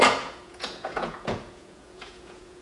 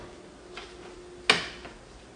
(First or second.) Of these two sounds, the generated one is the first